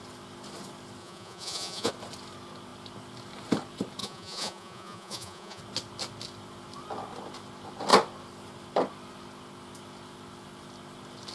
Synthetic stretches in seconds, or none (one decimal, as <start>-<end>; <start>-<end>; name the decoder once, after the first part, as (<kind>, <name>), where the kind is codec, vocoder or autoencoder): 1.0-1.9 (vocoder, Vocos); 4.0-5.6